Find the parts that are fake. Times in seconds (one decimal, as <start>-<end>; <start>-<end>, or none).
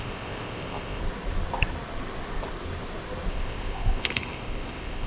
0.0-1.0; 3.3-5.1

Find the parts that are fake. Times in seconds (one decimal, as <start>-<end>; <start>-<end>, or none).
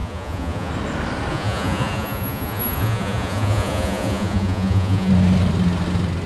0.0-0.7; 1.3-5.1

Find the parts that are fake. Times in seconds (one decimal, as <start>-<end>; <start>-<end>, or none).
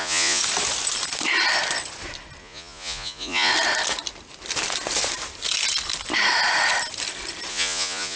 0.0-0.4; 2.4-3.5; 7.5-8.2